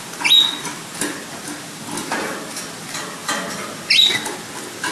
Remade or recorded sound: recorded